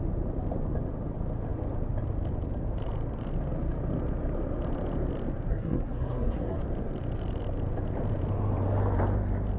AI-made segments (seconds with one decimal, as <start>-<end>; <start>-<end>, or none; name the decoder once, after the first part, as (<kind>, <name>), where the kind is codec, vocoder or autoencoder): 5.5-6.6 (codec, SNAC)